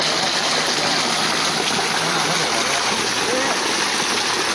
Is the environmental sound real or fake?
real